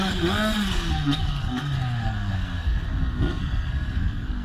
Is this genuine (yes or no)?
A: no